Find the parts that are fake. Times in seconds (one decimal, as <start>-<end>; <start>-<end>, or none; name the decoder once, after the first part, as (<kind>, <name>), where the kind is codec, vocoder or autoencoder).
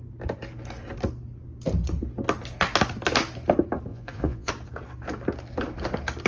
3.9-4.5 (vocoder, Vocos)